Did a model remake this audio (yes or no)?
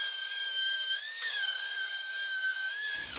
yes